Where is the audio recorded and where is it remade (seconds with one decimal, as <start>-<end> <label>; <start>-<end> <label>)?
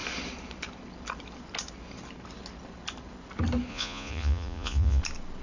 0.0-3.7 recorded; 3.7-5.0 remade; 5.0-5.4 recorded